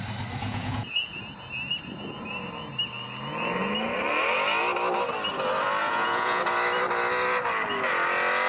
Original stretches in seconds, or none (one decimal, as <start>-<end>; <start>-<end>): 0.0-0.4; 1.2-5.8; 6.4-8.5